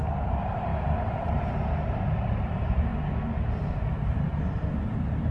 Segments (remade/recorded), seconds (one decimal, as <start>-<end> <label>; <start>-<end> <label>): 0.0-2.9 remade; 2.9-3.8 recorded; 3.8-5.3 remade